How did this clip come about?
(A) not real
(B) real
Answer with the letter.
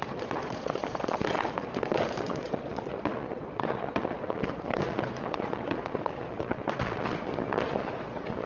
A